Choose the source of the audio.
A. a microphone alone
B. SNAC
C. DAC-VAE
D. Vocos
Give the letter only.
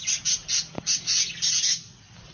A